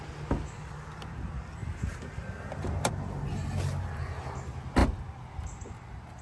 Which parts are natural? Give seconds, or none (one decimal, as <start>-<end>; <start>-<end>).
0.0-6.2